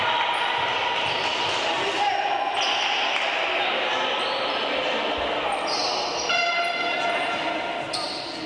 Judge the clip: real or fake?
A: real